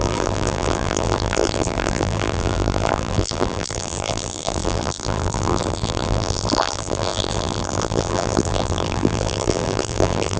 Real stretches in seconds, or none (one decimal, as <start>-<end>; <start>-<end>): none